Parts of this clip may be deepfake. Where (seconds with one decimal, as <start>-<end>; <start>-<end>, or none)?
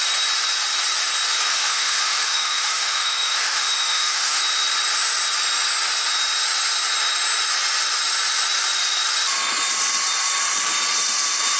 1.5-4.4